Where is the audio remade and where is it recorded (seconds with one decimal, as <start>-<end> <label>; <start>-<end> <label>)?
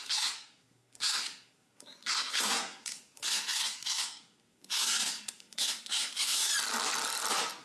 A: 0.0-6.5 remade; 6.5-7.6 recorded